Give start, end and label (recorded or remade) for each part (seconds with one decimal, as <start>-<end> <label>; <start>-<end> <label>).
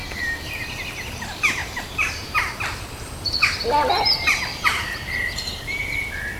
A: 0.0-1.6 recorded; 1.6-3.4 remade; 3.4-4.5 recorded; 4.5-6.4 remade